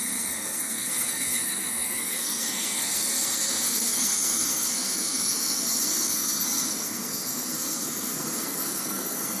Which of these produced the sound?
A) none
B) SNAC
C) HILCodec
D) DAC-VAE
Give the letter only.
B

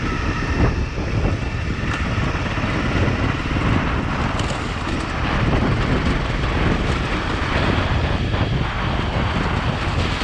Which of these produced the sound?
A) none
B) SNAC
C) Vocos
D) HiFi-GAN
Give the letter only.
A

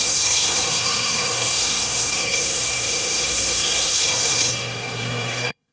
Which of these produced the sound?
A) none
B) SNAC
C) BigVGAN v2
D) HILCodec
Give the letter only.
B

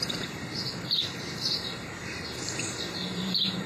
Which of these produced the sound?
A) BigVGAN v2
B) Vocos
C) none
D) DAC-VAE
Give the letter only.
A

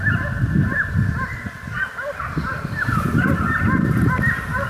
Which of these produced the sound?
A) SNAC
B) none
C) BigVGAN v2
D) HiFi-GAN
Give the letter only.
B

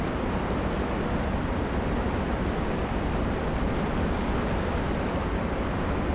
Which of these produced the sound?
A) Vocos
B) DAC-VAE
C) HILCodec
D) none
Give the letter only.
D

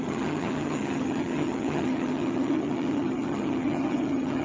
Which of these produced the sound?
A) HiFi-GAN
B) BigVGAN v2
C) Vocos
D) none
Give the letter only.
A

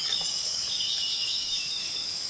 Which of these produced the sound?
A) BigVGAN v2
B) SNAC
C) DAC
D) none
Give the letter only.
C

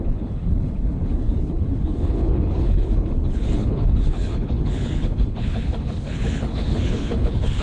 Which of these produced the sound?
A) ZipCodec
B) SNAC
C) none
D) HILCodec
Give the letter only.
D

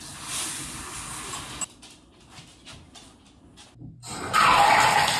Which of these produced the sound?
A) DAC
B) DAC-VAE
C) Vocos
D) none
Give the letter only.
D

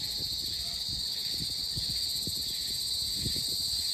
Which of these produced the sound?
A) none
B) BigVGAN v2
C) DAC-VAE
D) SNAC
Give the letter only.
A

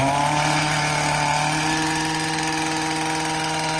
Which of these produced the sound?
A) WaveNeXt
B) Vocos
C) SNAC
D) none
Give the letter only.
D